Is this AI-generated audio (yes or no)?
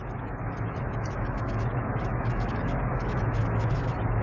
yes